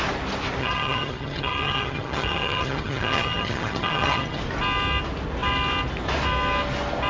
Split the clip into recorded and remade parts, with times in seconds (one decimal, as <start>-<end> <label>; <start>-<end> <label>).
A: 0.0-0.6 recorded; 0.6-4.4 remade; 4.4-7.1 recorded